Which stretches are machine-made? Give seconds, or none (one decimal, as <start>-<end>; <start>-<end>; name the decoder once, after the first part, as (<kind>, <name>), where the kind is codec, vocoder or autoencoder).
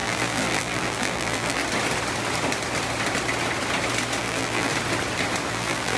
0.0-1.6 (vocoder, BigVGAN v2); 4.2-4.7; 5.5-6.0